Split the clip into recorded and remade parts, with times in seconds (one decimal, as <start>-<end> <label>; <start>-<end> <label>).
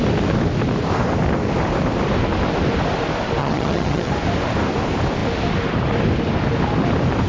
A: 0.0-3.4 recorded; 3.4-4.1 remade; 4.1-7.3 recorded